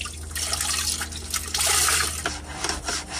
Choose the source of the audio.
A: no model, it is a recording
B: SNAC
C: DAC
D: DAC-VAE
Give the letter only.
A